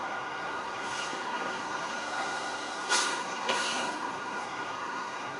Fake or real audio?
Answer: fake